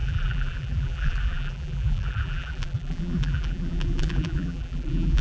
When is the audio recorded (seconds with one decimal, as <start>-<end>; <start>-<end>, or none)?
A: none